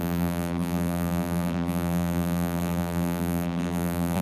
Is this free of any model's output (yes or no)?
no